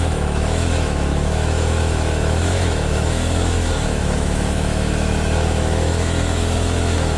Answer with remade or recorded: remade